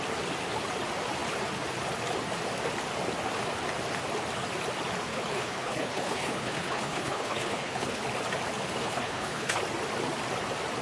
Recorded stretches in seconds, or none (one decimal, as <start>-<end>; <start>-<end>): 0.0-5.1; 8.0-8.8; 9.6-10.8

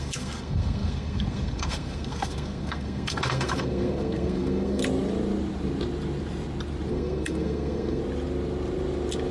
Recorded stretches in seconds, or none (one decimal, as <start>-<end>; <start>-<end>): 4.8-6.9; 8.0-9.3

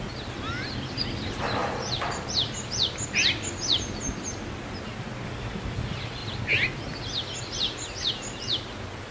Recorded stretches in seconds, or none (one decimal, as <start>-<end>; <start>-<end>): 0.0-9.1

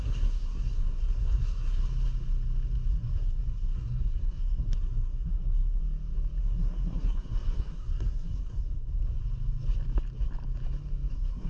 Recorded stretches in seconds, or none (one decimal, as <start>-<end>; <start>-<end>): 1.8-2.9; 5.8-6.4; 9.0-11.1